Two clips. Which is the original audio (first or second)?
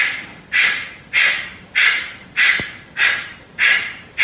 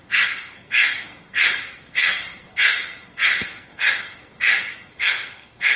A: first